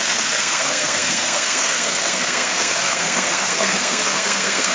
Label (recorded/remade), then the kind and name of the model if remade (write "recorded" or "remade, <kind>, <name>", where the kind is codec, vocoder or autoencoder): remade, codec, SNAC